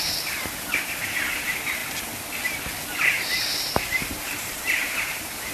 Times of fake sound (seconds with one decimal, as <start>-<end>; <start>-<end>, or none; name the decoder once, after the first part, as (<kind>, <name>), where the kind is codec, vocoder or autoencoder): 0.0-1.8 (vocoder, BigVGAN v2); 3.4-5.5

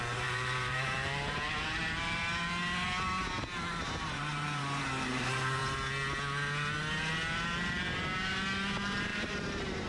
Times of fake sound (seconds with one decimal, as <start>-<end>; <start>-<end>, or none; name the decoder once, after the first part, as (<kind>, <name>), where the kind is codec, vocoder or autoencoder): 0.0-2.2 (vocoder, BigVGAN v2); 3.9-5.6; 8.7-9.9

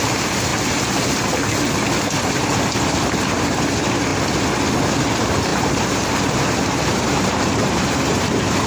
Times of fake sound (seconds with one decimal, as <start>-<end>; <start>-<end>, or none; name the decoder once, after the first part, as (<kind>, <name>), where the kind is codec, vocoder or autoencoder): 0.0-0.5 (vocoder, BigVGAN v2); 2.2-4.1; 5.0-8.7

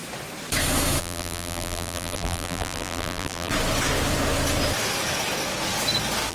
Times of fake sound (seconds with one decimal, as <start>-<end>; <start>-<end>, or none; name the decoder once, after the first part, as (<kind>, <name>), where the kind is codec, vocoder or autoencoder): 1.0-3.5 (vocoder, BigVGAN v2)

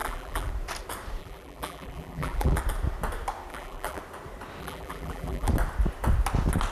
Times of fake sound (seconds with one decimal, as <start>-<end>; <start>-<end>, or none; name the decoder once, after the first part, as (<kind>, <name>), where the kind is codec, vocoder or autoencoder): 0.0-0.5 (vocoder, BigVGAN v2); 1.2-2.6; 3.5-4.0; 4.6-5.5

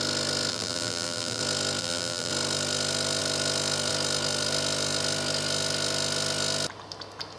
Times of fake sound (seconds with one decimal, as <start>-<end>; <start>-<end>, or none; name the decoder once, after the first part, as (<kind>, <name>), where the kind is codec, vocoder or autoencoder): 0.5-1.4 (vocoder, BigVGAN v2); 1.8-2.3

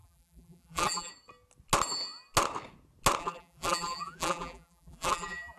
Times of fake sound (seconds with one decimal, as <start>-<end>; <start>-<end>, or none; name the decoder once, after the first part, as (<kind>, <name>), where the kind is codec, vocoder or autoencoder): 0.0-1.1 (vocoder, BigVGAN v2); 3.2-5.6

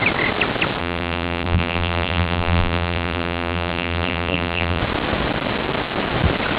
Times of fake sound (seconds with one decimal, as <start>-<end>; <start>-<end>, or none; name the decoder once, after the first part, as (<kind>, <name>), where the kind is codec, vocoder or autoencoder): 0.8-4.8 (vocoder, BigVGAN v2)